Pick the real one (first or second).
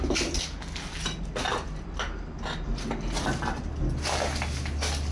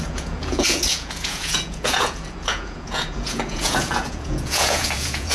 first